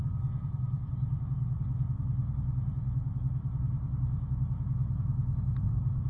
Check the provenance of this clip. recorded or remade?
recorded